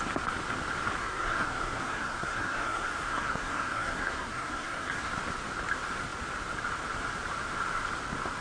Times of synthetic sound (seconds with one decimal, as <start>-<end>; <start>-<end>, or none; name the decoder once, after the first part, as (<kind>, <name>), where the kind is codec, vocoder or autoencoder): 1.0-5.1 (codec, SNAC)